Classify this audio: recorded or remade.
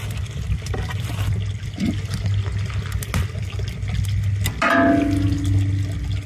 recorded